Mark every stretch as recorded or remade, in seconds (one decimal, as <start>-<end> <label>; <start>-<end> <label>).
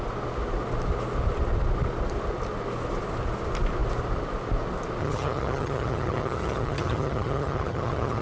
0.0-5.0 recorded; 5.0-8.2 remade